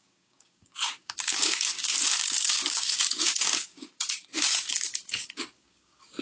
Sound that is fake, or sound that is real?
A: fake